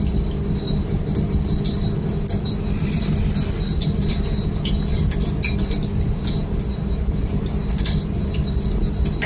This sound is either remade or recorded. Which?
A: recorded